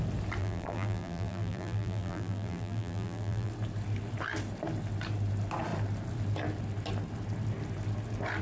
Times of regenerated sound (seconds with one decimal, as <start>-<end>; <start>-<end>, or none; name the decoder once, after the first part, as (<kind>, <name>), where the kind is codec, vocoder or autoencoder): 0.4-3.5 (vocoder, BigVGAN v2)